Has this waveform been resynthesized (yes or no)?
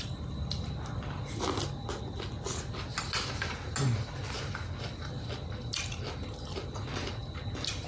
no